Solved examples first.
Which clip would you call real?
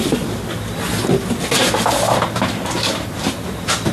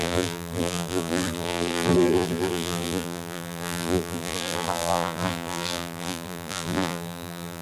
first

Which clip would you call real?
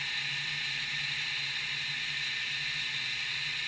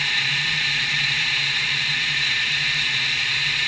first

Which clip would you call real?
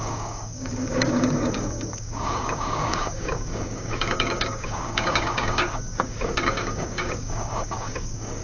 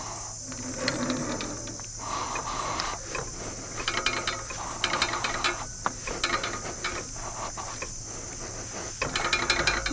second